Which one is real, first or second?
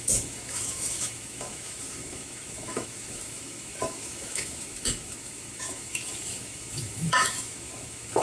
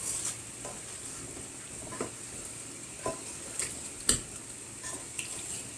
second